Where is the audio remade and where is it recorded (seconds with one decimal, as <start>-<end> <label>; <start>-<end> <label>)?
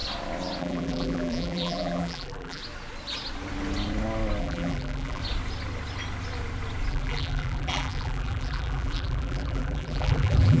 0.0-0.6 recorded; 0.6-2.6 remade; 2.6-4.4 recorded; 4.4-5.2 remade; 5.2-6.9 recorded; 6.9-10.6 remade